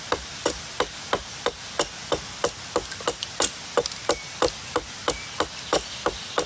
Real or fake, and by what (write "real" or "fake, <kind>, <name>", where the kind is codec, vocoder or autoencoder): real